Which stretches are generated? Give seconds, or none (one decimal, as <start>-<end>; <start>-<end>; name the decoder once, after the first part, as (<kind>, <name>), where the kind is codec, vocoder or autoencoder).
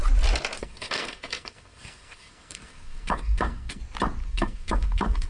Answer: 0.6-3.8 (codec, SNAC); 4.2-5.3